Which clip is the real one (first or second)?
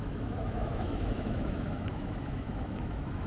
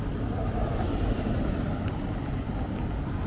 second